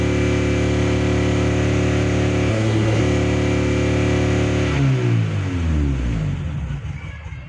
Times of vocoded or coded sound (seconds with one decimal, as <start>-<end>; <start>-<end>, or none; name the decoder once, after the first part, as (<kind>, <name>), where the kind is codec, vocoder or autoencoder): 2.5-3.0 (codec, SNAC)